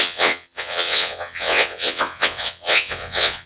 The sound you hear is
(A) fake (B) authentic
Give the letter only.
A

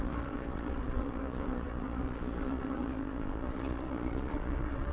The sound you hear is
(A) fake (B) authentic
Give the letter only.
A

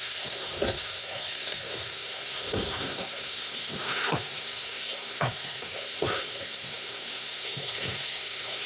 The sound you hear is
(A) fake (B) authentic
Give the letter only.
A